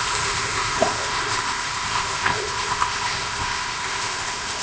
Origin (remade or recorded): remade